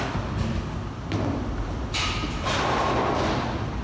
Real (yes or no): yes